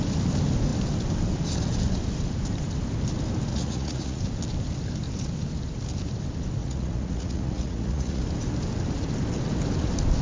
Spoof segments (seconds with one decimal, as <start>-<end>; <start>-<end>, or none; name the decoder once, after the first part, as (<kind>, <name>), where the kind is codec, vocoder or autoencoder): 3.5-4.2 (vocoder, Vocos); 6.6-8.2